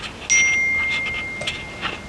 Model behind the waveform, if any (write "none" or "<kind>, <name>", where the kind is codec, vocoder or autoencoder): none